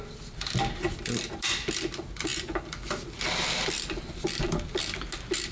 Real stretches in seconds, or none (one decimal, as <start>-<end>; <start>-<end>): 0.0-5.5